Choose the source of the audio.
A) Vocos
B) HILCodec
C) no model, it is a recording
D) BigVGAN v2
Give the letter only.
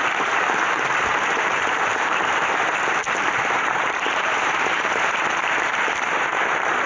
D